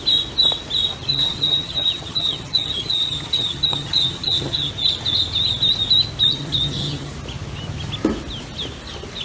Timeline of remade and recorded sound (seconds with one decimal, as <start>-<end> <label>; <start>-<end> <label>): 0.0-1.1 recorded; 1.1-4.7 remade; 4.7-6.3 recorded; 6.3-7.1 remade; 7.1-9.2 recorded

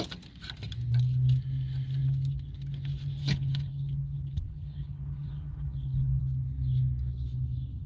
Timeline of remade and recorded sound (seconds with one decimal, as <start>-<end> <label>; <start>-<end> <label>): 0.0-3.2 recorded; 3.2-6.2 remade; 6.2-7.9 recorded

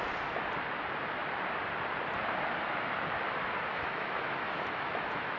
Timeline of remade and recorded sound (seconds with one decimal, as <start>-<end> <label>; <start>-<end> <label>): 0.0-3.7 recorded; 3.7-5.4 remade

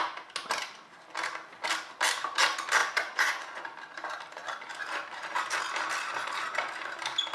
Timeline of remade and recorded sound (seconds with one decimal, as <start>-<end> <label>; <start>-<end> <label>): 0.0-2.8 recorded; 2.8-3.6 remade; 3.6-7.3 recorded

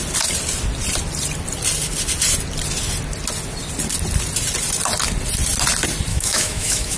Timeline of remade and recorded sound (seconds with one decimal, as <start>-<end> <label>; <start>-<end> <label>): 0.0-6.1 recorded; 6.1-7.0 remade